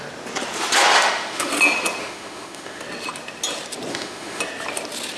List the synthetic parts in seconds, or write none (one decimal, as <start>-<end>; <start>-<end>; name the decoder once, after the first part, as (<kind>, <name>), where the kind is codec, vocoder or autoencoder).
0.9-1.5 (autoencoder, DAC-VAE); 2.0-2.8; 3.9-4.4

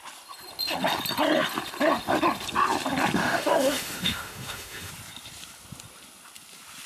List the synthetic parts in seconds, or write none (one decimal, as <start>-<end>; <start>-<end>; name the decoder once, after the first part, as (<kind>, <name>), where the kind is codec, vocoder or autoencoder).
3.2-4.9 (autoencoder, DAC-VAE)

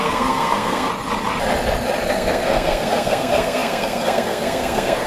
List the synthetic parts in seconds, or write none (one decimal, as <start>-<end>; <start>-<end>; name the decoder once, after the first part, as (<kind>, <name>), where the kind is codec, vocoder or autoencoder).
0.0-0.9 (codec, SNAC); 2.1-5.1

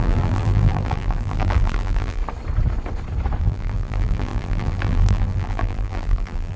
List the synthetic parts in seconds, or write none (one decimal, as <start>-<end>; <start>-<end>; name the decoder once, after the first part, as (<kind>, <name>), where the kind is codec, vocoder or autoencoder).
0.0-2.2 (vocoder, BigVGAN v2); 3.4-6.6

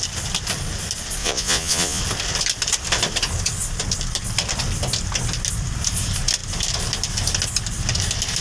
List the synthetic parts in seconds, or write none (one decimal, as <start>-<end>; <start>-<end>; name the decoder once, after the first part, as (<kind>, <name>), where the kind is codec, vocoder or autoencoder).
1.2-2.0 (vocoder, Vocos)

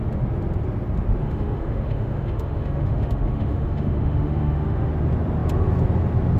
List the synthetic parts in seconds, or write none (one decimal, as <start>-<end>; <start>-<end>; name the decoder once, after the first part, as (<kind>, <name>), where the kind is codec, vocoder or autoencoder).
1.2-4.9 (autoencoder, DAC-VAE)

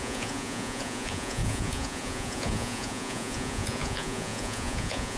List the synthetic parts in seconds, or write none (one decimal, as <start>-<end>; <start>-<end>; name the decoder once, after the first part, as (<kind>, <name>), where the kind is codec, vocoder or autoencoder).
0.0-5.2 (vocoder, Vocos)

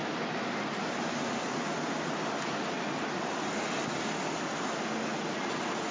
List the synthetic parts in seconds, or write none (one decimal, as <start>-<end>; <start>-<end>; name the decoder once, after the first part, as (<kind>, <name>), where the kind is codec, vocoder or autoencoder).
none